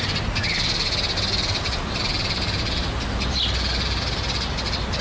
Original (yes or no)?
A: yes